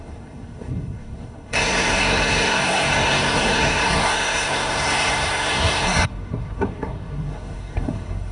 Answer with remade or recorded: remade